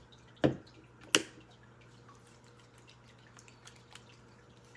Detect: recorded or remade recorded